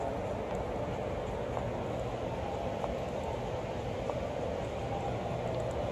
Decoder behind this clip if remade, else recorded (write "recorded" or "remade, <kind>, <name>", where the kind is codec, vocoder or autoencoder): recorded